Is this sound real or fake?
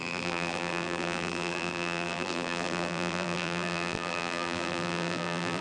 fake